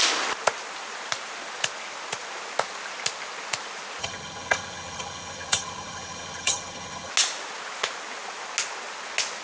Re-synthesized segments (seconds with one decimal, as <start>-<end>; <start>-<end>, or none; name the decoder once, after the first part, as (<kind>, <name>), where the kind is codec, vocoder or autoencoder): 4.0-7.1 (vocoder, HiFi-GAN)